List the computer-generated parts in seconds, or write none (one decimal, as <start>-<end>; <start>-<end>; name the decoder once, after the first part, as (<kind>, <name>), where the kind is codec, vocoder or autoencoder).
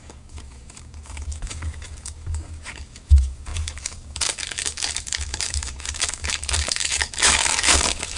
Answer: 0.0-8.2 (codec, DAC)